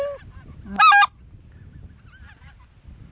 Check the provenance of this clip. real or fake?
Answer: real